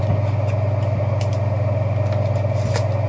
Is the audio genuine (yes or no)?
yes